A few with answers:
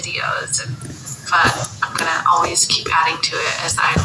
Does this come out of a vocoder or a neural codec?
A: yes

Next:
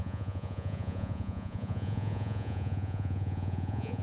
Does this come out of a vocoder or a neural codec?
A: yes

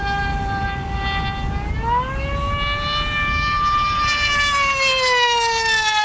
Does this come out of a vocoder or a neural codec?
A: no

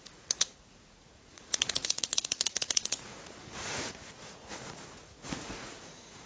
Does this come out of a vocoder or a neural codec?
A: yes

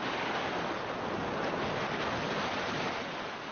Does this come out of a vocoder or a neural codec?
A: no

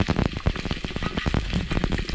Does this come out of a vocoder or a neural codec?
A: no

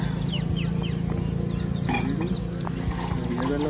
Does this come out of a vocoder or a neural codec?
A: no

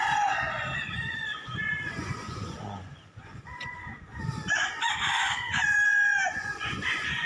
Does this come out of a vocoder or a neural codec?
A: yes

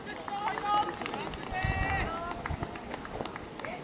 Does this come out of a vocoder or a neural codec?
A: no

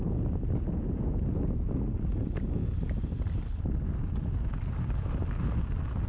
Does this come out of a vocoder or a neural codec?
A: no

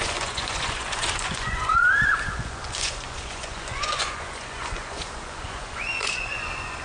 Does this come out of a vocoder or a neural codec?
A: yes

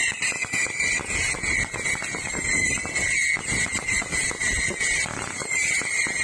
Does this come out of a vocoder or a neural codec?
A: no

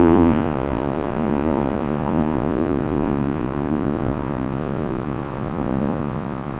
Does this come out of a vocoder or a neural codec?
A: yes